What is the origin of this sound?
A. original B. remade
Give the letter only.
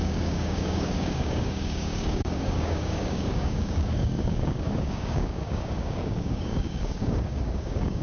B